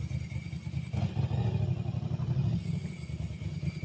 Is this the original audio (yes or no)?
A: yes